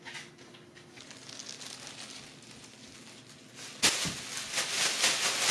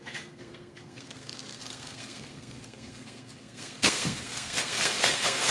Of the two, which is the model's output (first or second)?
second